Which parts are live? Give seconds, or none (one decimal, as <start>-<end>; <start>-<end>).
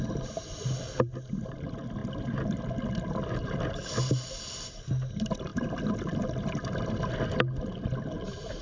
0.0-8.6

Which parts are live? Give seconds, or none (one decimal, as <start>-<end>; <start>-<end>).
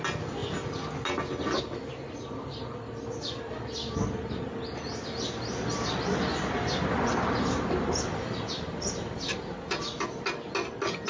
0.0-11.1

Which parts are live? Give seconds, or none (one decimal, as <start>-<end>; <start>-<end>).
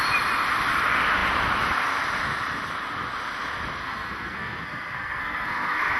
0.0-3.8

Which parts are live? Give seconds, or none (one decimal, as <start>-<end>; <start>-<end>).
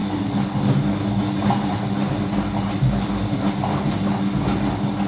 0.0-5.1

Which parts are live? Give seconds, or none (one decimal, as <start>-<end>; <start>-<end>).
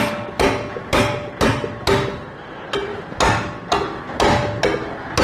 0.0-5.2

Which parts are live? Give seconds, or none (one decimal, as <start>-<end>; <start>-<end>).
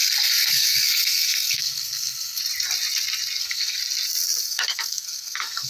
2.4-3.4; 3.8-4.4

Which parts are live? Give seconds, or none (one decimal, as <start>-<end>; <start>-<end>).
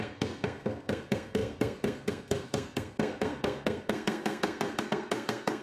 none